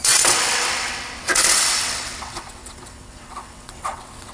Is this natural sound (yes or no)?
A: no